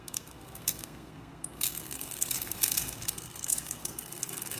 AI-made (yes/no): yes